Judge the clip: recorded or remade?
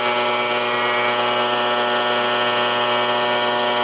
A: recorded